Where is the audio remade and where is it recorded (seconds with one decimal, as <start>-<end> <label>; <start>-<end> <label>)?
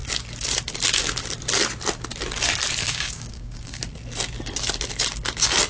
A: 0.0-2.8 recorded; 2.8-3.8 remade; 3.8-5.7 recorded